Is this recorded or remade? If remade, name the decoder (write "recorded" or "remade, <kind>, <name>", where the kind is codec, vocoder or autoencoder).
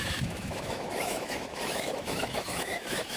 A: remade, autoencoder, DAC-VAE